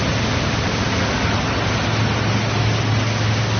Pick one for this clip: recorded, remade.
recorded